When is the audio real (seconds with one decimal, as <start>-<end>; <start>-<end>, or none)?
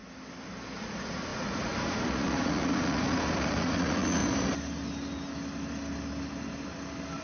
0.0-0.8; 4.2-7.2